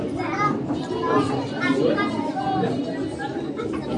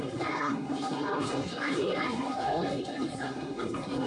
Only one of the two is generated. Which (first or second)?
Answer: second